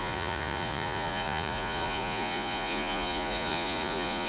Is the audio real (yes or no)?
no